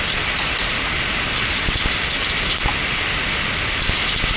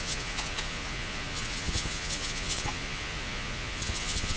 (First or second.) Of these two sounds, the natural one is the first